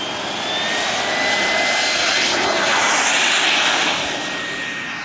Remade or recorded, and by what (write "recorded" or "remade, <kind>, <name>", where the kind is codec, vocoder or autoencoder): recorded